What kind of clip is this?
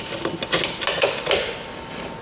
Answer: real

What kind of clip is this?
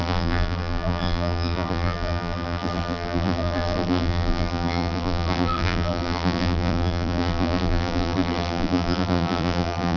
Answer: fake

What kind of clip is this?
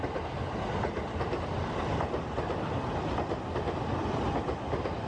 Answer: real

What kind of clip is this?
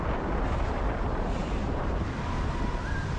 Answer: fake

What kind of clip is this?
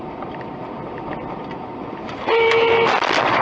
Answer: real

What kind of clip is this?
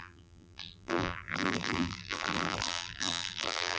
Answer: fake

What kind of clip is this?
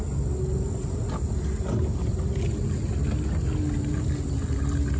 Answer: real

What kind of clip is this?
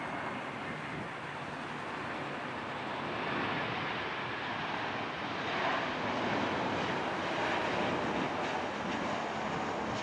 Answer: real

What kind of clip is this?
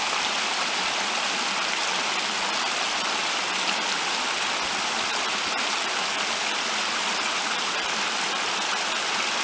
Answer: real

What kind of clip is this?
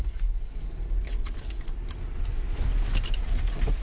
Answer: real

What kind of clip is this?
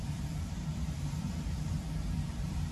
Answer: fake